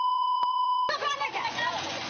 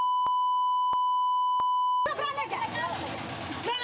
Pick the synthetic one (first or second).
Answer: first